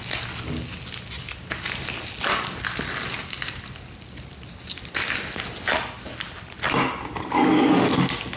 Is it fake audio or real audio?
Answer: real